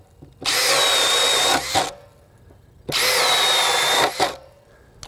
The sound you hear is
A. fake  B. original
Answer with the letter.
B